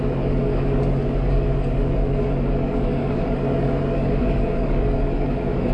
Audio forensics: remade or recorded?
remade